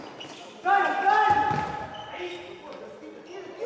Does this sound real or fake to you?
real